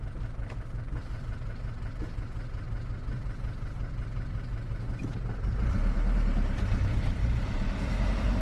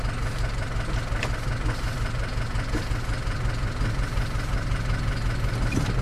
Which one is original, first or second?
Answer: second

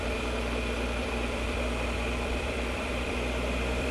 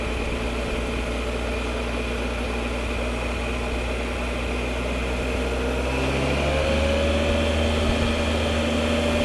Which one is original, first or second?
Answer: second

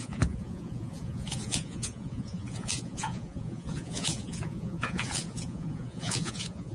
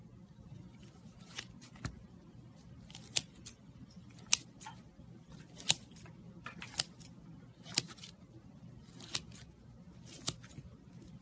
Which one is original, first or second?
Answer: second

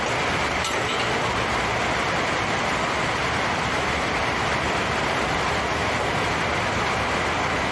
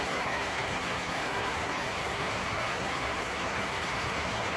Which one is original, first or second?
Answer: first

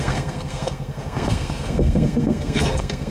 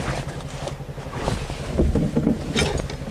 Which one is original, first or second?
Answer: second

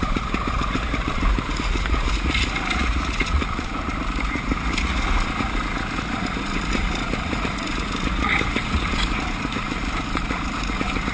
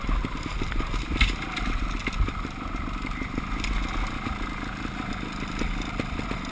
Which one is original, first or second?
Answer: second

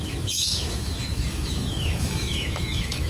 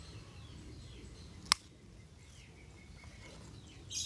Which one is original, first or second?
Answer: second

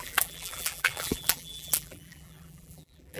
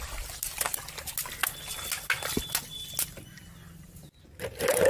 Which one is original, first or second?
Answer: second